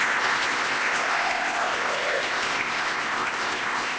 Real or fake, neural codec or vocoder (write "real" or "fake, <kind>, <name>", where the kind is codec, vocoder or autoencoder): fake, codec, ZipCodec